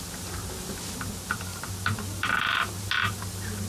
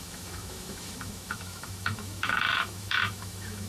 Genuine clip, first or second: first